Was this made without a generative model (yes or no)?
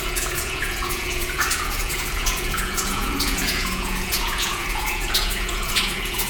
no